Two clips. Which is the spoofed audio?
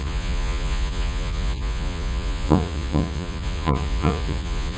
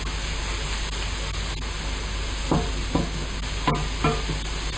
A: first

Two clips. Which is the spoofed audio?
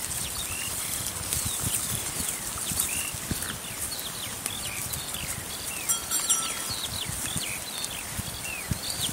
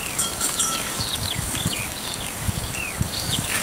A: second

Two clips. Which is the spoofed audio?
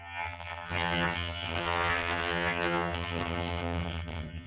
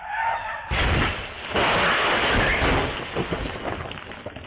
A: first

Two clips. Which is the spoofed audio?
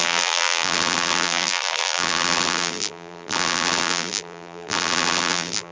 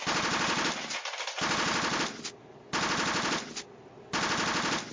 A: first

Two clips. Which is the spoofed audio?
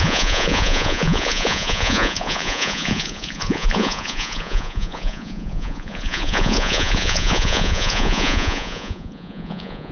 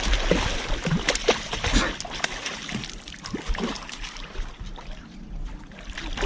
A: first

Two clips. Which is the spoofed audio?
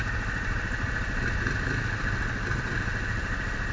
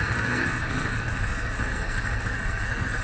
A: second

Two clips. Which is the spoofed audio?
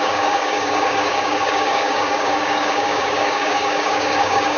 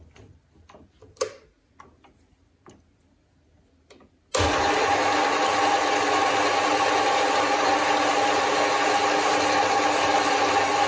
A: first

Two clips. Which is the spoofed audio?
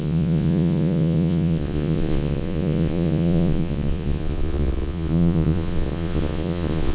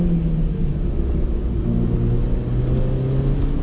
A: first